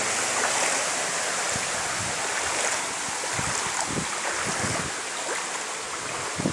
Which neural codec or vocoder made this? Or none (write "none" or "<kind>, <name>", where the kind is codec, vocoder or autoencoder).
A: none